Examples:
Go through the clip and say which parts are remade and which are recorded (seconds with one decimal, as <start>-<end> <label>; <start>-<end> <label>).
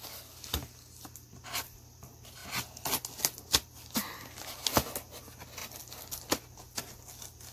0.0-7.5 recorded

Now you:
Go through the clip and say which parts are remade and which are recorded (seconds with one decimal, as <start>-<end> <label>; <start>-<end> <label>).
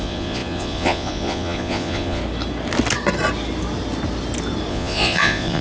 0.0-2.2 remade; 2.2-4.7 recorded; 4.7-5.6 remade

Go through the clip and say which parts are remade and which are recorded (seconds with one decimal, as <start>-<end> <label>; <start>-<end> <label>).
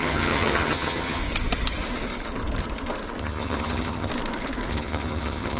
0.0-1.2 remade; 1.2-3.2 recorded; 3.2-4.1 remade; 4.1-4.7 recorded; 4.7-5.6 remade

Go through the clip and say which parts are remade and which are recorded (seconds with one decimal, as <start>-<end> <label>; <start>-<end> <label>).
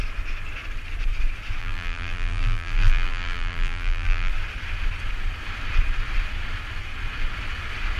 0.0-1.6 recorded; 1.6-4.3 remade; 4.3-8.0 recorded